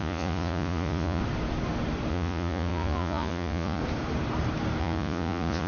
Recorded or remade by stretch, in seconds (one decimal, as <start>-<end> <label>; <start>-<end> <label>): 0.0-1.2 remade; 1.2-2.1 recorded; 2.1-3.8 remade; 3.8-4.8 recorded; 4.8-5.7 remade